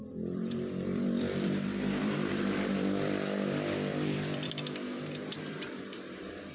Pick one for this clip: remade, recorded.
remade